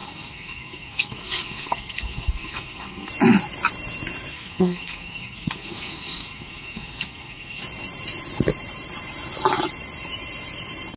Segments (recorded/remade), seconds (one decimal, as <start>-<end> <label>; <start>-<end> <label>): 0.0-3.1 remade; 3.1-4.3 recorded; 4.3-7.6 remade; 7.6-11.0 recorded